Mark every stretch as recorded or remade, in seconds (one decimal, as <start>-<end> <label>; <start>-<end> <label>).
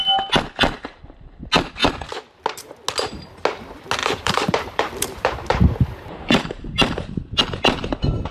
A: 0.0-4.0 recorded; 4.0-7.4 remade; 7.4-8.3 recorded